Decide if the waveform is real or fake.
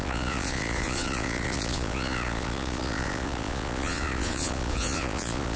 fake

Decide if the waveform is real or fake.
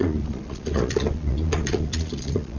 fake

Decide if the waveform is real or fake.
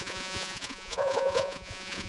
fake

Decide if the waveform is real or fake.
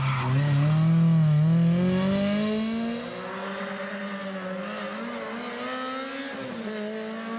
real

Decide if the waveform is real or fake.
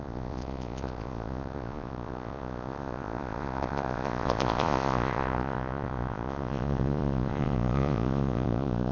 fake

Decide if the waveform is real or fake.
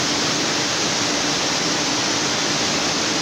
real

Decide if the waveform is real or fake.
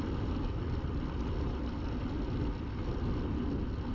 real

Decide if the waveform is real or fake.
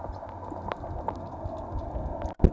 real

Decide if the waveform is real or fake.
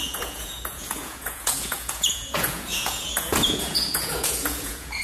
fake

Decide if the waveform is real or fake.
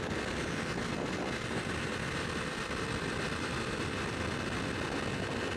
real